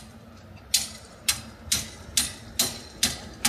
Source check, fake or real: real